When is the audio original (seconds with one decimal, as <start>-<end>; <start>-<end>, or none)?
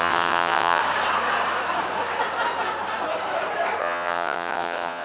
0.8-3.8